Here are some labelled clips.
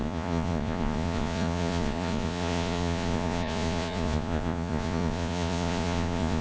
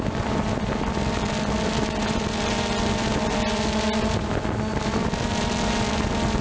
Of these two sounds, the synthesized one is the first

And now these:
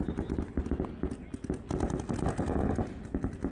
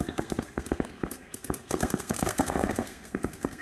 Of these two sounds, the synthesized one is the second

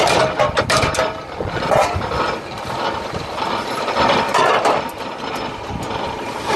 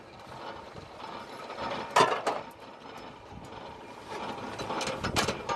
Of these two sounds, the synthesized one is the first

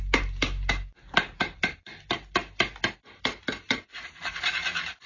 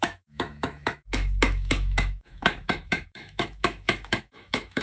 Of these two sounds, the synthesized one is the second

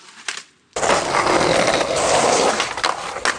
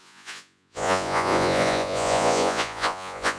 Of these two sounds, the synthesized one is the second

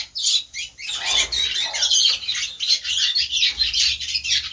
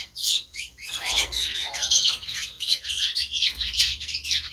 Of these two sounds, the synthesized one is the second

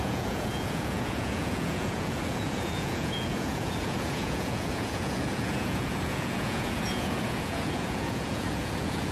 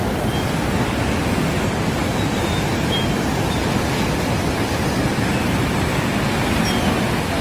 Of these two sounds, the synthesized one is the first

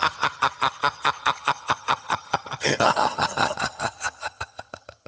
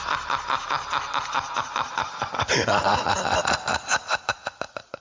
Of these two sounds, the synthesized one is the first